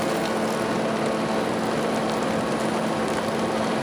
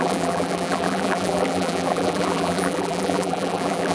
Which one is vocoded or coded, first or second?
second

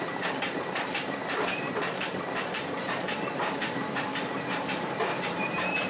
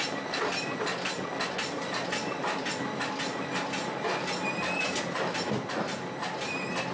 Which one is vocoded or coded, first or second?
first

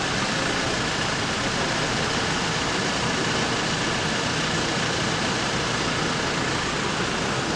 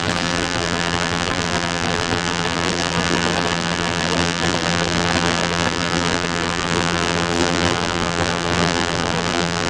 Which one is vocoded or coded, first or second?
second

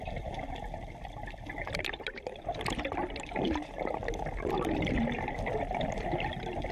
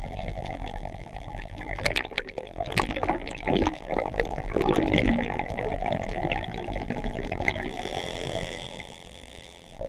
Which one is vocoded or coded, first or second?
second